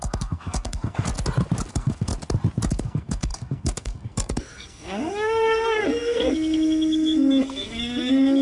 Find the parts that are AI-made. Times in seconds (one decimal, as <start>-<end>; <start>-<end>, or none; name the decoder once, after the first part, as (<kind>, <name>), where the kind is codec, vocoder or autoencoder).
0.0-1.1 (codec, SNAC); 1.7-2.1; 2.7-8.4

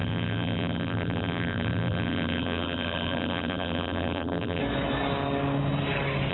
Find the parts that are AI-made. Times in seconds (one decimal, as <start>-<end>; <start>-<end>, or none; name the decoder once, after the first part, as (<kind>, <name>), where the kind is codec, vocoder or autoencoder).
0.0-4.6 (vocoder, BigVGAN v2)

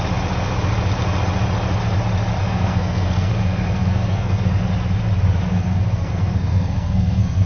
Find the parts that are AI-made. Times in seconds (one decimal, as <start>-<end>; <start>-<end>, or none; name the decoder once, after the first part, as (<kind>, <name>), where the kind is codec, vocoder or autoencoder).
2.4-4.6 (codec, SNAC); 5.5-7.5

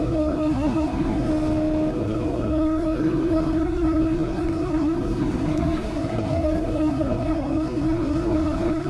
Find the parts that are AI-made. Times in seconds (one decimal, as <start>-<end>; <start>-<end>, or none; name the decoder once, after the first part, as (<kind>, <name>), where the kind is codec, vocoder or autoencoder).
0.0-1.3 (codec, SNAC); 1.9-8.9

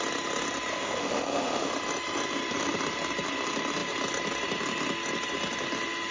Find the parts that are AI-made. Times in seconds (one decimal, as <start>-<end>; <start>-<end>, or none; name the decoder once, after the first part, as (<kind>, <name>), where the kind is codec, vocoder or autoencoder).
0.7-1.7 (autoencoder, DAC-VAE)

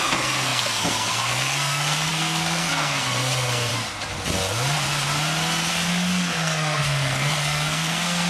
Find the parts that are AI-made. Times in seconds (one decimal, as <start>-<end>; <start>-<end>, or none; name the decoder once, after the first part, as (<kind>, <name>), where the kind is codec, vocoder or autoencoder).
0.0-3.7 (codec, SNAC); 5.7-8.3